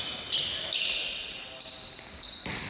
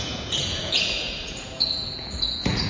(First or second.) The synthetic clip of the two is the second